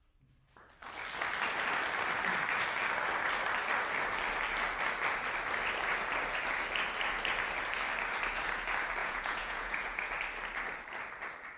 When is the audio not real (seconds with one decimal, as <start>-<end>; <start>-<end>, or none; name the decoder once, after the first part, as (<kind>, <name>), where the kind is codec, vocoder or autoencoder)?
9.0-10.1 (vocoder, Vocos)